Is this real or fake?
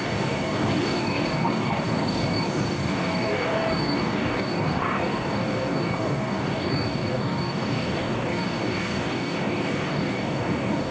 fake